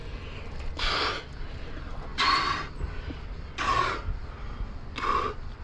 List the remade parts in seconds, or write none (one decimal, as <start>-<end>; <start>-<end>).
2.1-2.8; 3.7-4.2